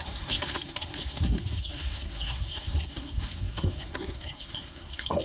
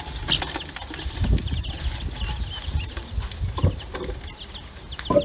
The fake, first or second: first